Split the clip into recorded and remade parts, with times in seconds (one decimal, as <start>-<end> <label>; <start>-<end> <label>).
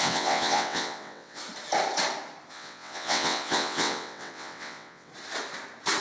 0.0-1.4 remade; 1.4-2.5 recorded; 2.5-5.1 remade; 5.1-6.0 recorded